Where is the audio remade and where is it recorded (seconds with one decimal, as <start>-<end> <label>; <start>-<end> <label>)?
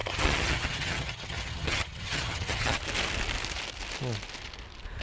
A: 0.0-2.8 remade; 2.8-5.0 recorded